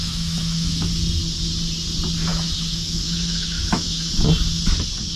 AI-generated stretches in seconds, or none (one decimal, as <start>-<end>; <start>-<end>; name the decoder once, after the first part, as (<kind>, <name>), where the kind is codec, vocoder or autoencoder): 0.0-0.9 (autoencoder, DAC-VAE); 2.3-4.1